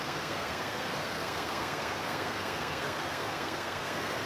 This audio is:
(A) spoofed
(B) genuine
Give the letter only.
A